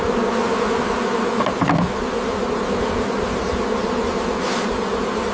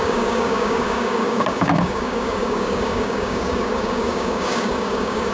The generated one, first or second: second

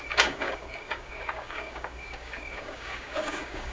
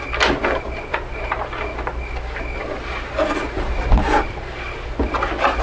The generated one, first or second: first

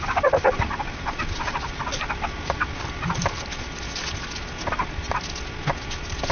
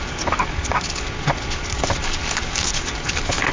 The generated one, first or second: second